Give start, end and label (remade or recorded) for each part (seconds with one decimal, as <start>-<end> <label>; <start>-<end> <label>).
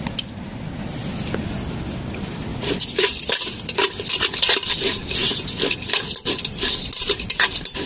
0.0-7.9 recorded